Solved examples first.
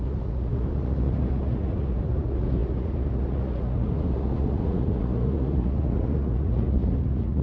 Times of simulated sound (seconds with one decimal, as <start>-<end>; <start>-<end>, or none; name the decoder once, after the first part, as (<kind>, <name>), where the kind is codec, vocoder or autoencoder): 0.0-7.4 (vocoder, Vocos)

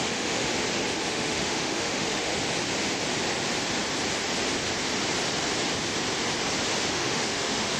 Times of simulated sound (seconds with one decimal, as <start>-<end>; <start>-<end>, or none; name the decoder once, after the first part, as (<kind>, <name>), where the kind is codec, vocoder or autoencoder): 0.0-0.5 (autoencoder, DAC-VAE); 1.1-2.3; 6.9-7.8

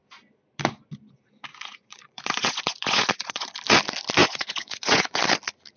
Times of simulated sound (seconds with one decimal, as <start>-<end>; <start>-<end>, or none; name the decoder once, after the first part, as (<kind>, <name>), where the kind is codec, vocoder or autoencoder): 1.5-3.5 (vocoder, Vocos); 4.2-5.2

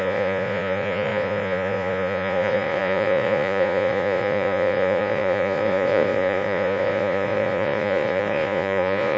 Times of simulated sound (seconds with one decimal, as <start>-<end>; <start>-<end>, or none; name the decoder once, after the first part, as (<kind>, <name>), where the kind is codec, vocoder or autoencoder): 0.0-9.2 (vocoder, Vocos)